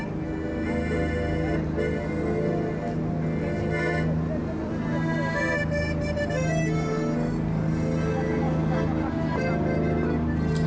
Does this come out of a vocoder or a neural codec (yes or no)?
no